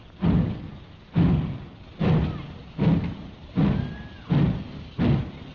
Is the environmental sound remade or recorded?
recorded